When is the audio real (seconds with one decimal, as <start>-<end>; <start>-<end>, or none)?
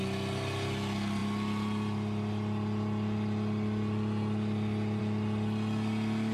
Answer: 0.0-6.3